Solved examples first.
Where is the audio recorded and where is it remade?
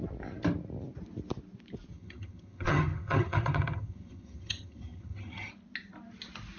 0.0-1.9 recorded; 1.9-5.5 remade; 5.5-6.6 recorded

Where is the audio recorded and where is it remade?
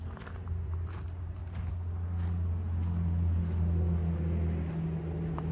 0.0-5.5 recorded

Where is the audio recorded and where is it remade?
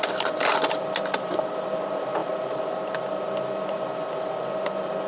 0.0-5.1 recorded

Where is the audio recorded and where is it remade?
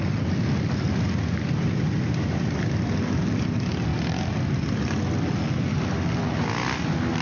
0.0-7.2 recorded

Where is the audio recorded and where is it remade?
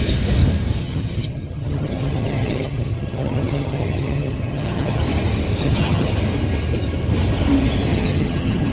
0.0-0.8 recorded; 0.8-5.0 remade; 5.0-5.6 recorded; 5.6-6.1 remade; 6.1-7.9 recorded; 7.9-8.7 remade